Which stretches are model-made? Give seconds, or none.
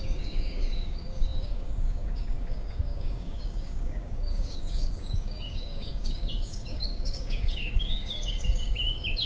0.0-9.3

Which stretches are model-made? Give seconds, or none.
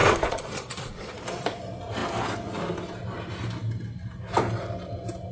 0.0-1.2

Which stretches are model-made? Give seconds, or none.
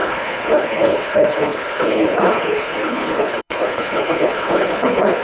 0.0-5.2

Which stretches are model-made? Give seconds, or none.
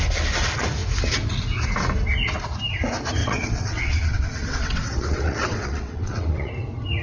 3.2-6.5